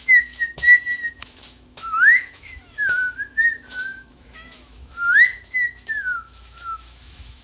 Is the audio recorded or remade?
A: remade